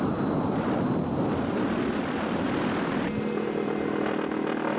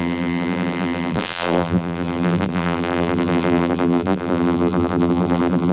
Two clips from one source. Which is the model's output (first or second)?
second